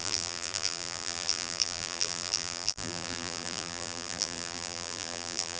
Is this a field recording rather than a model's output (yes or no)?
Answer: no